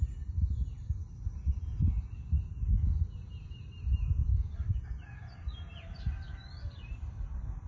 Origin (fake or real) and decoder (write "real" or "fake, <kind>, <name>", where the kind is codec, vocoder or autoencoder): real